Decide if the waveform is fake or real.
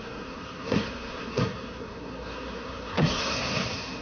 fake